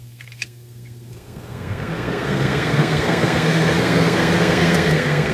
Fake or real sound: fake